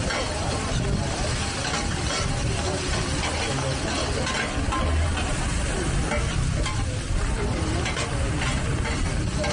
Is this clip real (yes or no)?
yes